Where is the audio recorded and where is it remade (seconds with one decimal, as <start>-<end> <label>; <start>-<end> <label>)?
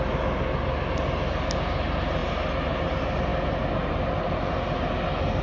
0.0-5.4 recorded